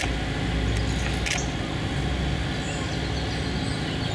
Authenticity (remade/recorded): recorded